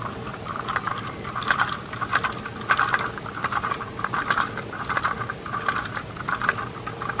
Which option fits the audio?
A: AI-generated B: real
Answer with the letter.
B